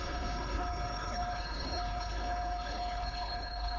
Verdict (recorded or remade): remade